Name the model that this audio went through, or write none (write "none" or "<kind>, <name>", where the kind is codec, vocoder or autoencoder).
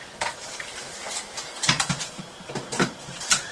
vocoder, BigVGAN v2